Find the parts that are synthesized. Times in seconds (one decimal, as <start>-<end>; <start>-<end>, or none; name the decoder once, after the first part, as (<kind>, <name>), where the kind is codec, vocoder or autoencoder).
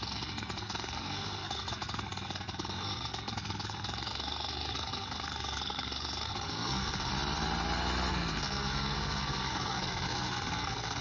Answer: 0.0-7.1 (codec, SNAC); 8.1-11.0